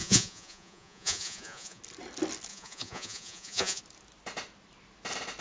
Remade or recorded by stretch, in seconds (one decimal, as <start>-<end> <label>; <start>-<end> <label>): 0.0-1.8 remade; 1.8-2.5 recorded; 2.5-3.8 remade; 3.8-5.4 recorded